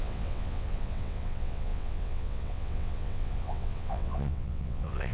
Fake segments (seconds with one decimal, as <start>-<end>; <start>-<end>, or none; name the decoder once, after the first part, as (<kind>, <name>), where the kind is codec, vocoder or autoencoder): 0.0-5.1 (vocoder, WaveNeXt)